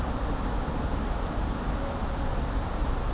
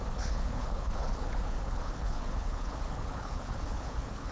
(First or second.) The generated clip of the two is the second